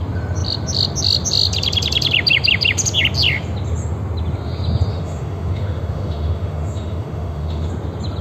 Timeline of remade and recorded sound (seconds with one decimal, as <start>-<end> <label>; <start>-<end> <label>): 0.0-4.9 recorded; 4.9-7.7 remade; 7.7-8.2 recorded